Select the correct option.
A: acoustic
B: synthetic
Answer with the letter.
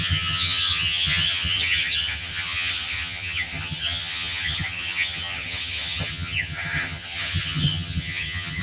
B